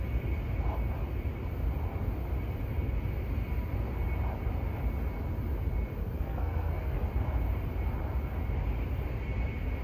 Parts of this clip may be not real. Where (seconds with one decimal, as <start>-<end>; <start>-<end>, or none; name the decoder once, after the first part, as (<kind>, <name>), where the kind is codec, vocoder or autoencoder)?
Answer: 6.0-7.0 (codec, SNAC)